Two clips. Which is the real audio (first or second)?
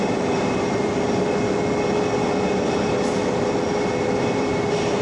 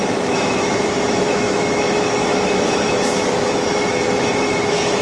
first